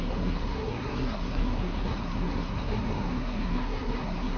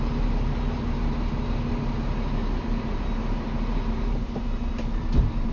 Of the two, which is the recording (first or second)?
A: second